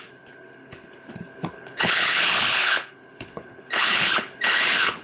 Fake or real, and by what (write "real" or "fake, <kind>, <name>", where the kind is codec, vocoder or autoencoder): fake, codec, HILCodec